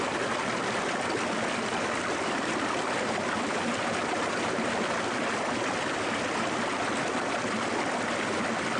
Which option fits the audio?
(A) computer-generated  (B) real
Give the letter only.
B